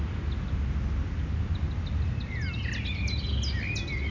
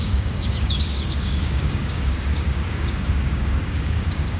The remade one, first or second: second